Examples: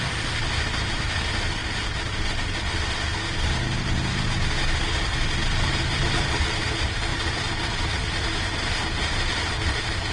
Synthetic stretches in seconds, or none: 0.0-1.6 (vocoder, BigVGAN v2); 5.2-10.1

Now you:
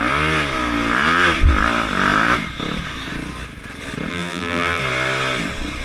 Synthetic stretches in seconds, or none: 4.1-4.8 (vocoder, BigVGAN v2)

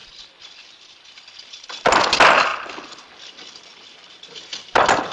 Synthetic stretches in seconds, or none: 0.0-2.1 (vocoder, BigVGAN v2)